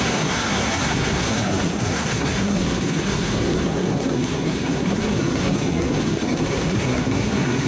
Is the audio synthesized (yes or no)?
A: yes